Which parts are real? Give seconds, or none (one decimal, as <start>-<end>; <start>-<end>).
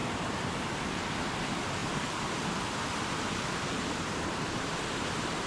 0.5-1.8; 4.8-5.5